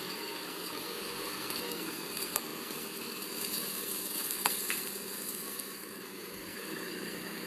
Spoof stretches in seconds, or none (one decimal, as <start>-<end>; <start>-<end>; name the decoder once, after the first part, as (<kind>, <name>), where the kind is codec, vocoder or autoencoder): 0.0-7.5 (codec, SNAC)